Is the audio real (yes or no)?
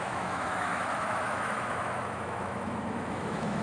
no